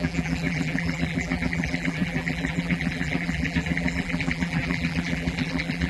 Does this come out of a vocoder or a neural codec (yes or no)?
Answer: yes